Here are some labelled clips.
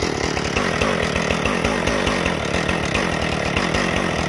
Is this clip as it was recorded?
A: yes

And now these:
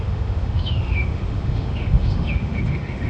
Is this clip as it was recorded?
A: no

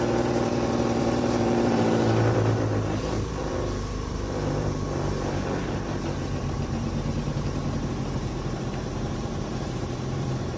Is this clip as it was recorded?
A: no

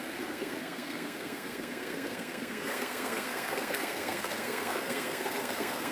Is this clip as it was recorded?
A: no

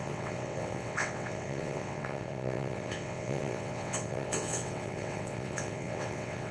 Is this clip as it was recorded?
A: no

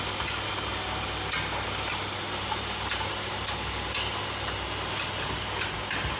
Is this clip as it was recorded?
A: yes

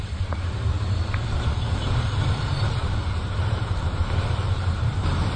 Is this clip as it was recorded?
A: no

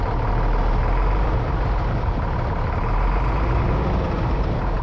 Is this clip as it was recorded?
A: yes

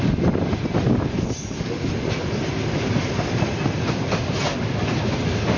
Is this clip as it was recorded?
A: yes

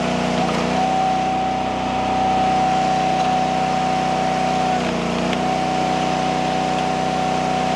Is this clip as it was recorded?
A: yes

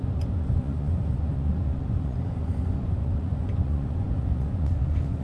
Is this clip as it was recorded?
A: no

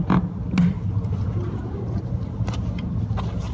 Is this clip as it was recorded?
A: yes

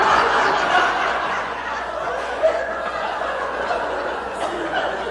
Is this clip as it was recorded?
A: no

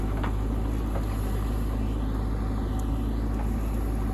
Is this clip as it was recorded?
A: yes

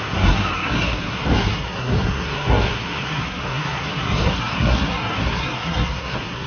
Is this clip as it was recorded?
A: no